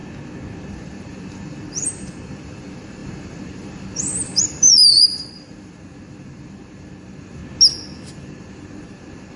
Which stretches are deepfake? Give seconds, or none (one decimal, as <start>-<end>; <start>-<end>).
0.7-7.4; 8.1-9.4